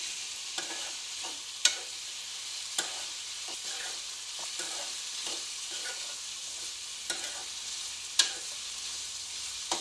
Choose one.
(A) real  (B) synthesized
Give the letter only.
A